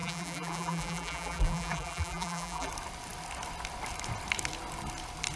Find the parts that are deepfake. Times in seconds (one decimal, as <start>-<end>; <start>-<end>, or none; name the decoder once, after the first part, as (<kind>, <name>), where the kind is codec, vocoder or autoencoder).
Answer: 0.0-2.7 (vocoder, BigVGAN v2)